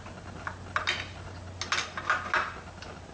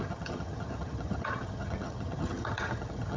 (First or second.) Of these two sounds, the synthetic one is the second